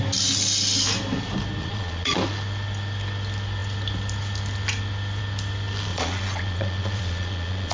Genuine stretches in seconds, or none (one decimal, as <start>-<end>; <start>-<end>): 0.0-1.6; 2.2-5.9